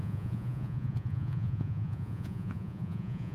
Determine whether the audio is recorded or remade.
remade